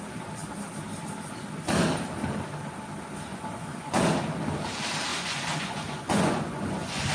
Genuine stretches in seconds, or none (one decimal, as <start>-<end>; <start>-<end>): 0.0-3.3; 4.0-5.1